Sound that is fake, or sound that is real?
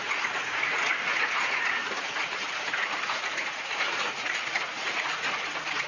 fake